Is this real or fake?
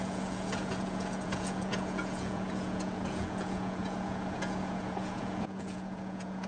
fake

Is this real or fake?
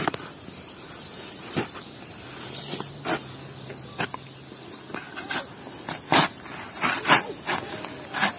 real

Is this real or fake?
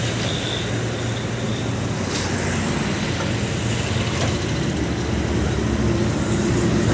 real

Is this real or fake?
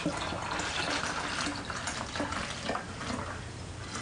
real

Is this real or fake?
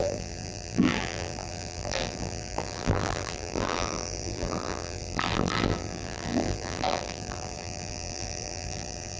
fake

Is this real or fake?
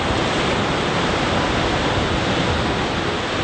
real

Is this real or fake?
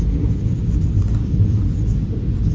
real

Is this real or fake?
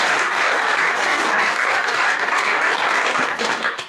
fake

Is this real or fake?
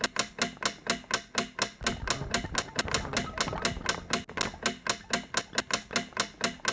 real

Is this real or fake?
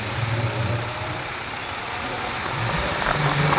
real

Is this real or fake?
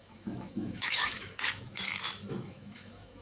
fake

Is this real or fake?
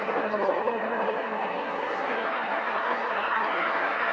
fake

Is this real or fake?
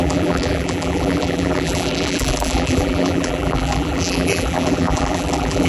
fake